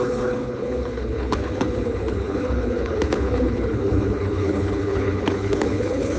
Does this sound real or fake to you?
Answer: fake